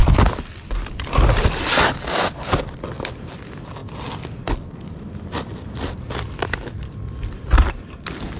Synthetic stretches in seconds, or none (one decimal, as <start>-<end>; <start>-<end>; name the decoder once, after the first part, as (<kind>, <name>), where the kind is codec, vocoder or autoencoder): 0.0-1.7 (vocoder, BigVGAN v2)